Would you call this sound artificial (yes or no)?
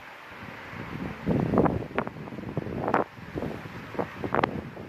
no